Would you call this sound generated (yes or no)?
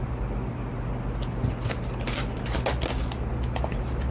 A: no